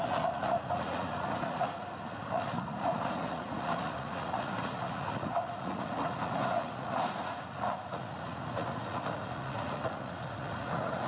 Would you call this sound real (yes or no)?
no